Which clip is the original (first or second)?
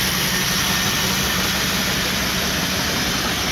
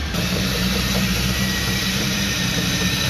first